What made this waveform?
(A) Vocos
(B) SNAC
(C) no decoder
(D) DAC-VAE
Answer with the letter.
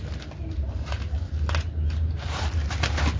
C